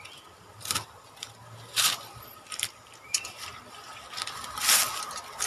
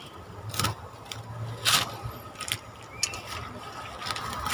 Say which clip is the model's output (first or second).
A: first